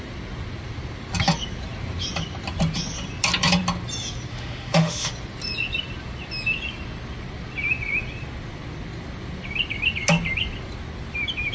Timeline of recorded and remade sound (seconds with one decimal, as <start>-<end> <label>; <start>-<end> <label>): 0.0-4.3 recorded; 4.3-5.1 remade; 5.1-11.5 recorded